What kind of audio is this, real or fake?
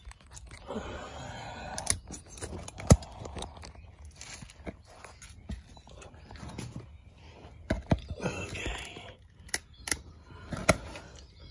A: real